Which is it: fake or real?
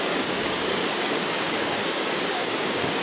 fake